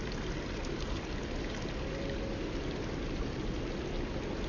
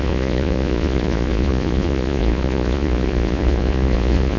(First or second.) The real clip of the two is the first